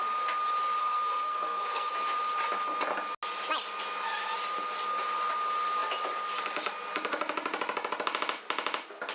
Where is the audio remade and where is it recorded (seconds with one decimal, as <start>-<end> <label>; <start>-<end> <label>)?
0.0-0.8 recorded; 0.8-1.9 remade; 1.9-9.1 recorded